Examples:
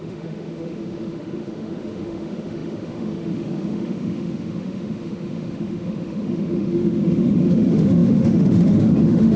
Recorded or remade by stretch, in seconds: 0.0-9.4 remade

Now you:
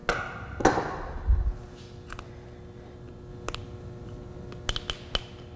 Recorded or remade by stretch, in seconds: 0.0-5.6 recorded

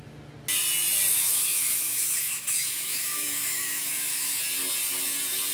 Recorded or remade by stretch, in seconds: 0.0-1.1 recorded; 1.1-4.4 remade; 4.4-5.5 recorded

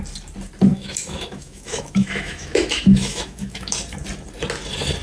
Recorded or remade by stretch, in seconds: 0.0-0.7 recorded; 0.7-3.7 remade; 3.7-5.0 recorded